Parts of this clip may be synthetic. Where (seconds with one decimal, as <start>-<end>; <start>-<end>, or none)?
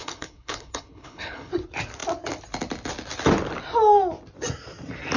0.0-1.5